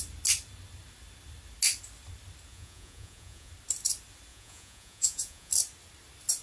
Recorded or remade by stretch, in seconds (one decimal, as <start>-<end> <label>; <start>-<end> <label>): 0.0-2.5 recorded; 2.5-3.5 remade; 3.5-4.3 recorded; 4.3-5.5 remade; 5.5-6.4 recorded